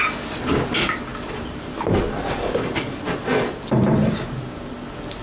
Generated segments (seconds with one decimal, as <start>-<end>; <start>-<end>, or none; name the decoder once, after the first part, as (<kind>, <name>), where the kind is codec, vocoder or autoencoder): 1.1-4.2 (vocoder, BigVGAN v2)